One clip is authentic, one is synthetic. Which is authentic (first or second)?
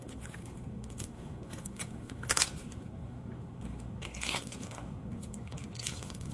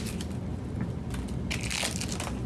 second